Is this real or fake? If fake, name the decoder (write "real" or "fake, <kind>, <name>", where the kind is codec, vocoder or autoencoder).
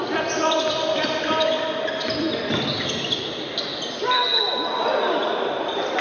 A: fake, vocoder, BigVGAN v2